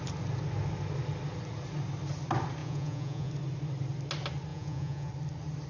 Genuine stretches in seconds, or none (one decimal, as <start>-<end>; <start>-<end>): 0.0-2.6; 3.3-4.5; 5.1-5.7